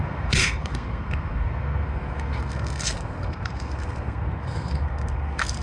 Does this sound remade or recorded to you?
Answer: remade